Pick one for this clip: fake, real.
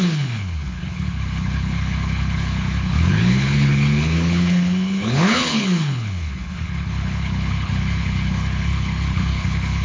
fake